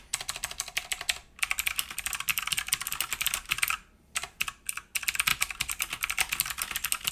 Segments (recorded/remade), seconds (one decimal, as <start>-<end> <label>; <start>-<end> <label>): 0.0-7.1 recorded